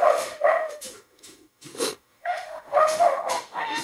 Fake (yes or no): yes